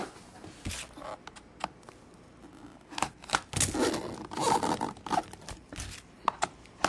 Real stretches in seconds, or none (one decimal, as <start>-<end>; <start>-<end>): 0.0-6.9